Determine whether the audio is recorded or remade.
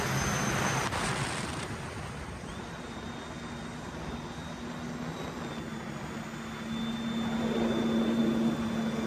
recorded